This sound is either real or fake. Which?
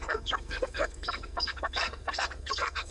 fake